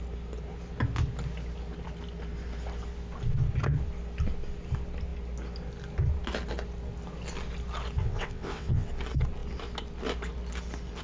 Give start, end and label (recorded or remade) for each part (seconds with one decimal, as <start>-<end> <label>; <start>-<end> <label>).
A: 0.0-8.0 recorded; 8.0-8.9 remade; 8.9-11.0 recorded